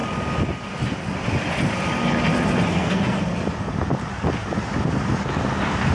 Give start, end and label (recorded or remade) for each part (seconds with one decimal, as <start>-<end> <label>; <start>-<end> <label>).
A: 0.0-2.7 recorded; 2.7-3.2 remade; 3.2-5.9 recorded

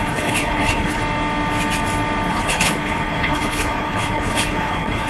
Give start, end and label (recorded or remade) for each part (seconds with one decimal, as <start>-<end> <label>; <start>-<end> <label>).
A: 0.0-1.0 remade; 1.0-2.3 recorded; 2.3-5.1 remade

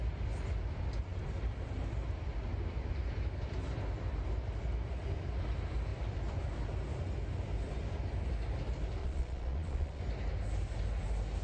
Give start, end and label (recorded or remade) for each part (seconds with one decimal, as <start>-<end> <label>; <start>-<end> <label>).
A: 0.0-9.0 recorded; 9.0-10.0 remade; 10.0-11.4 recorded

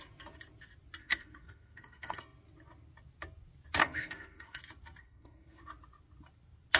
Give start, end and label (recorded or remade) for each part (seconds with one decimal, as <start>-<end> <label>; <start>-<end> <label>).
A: 0.0-1.0 recorded; 1.0-2.2 remade; 2.2-3.8 recorded; 3.8-4.6 remade; 4.6-5.0 recorded; 5.0-5.6 remade; 5.6-6.8 recorded

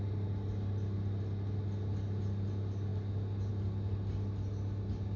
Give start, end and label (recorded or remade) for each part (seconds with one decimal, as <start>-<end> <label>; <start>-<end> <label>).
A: 0.0-5.2 recorded

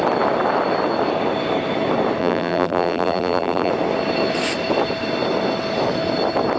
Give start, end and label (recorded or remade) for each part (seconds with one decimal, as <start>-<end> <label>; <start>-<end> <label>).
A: 0.0-2.2 recorded; 2.2-3.7 remade; 3.7-6.6 recorded